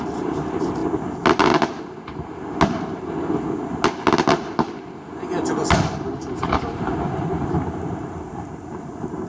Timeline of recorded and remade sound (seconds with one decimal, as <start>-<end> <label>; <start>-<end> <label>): 0.0-0.8 remade; 0.8-5.9 recorded; 5.9-9.3 remade